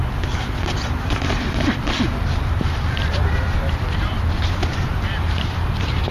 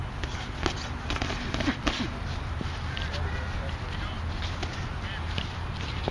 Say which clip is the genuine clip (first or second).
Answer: second